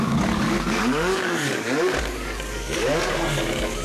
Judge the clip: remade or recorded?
remade